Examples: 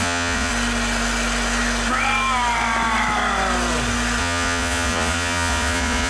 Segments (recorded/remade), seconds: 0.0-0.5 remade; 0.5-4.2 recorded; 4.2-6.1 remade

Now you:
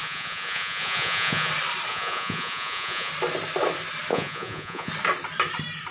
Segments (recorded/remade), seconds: 0.0-1.5 remade; 1.5-1.9 recorded; 1.9-3.1 remade; 3.1-4.1 recorded; 4.1-4.9 remade; 4.9-5.9 recorded

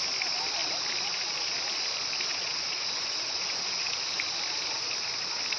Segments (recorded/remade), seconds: 0.0-2.3 recorded; 2.3-3.9 remade; 3.9-5.6 recorded

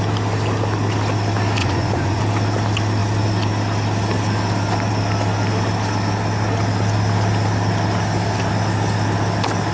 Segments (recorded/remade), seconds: 0.0-1.6 recorded; 1.6-2.2 remade; 2.2-9.7 recorded

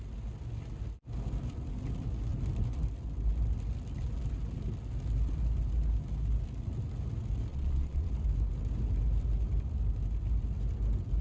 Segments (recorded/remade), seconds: 0.0-7.5 recorded; 7.5-8.1 remade; 8.1-11.2 recorded

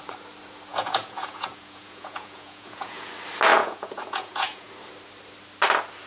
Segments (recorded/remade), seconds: 0.0-0.7 recorded; 0.7-3.1 remade; 3.1-3.5 recorded; 3.5-4.7 remade; 4.7-6.1 recorded

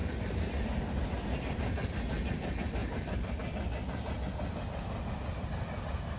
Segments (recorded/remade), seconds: 0.0-6.2 recorded